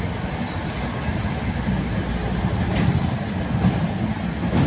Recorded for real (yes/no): yes